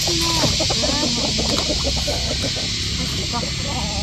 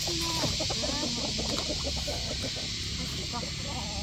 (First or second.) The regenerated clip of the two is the second